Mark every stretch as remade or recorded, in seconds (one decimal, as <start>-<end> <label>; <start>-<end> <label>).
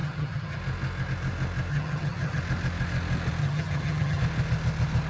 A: 0.0-0.6 remade; 0.6-1.7 recorded; 1.7-2.4 remade; 2.4-3.4 recorded; 3.4-4.2 remade; 4.2-5.1 recorded